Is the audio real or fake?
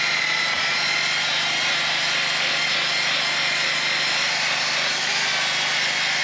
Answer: real